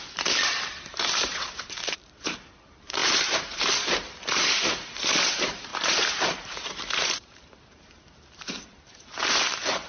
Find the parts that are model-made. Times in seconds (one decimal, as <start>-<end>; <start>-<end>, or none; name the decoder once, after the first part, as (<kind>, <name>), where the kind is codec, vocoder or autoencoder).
0.0-9.9 (vocoder, BigVGAN v2)